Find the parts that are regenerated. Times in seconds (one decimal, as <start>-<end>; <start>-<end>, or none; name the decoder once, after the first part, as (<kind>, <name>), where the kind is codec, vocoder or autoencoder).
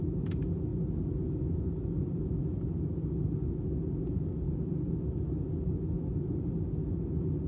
none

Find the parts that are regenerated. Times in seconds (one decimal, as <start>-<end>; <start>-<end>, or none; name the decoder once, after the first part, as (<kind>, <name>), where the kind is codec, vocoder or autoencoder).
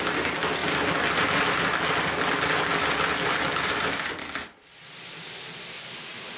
none